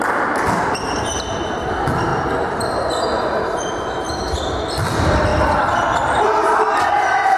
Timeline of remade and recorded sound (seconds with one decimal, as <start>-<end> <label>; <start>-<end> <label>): 0.0-7.4 recorded